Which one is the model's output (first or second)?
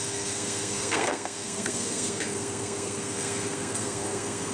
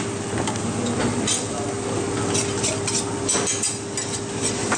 first